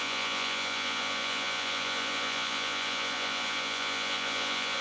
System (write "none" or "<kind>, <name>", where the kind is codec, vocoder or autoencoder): vocoder, Vocos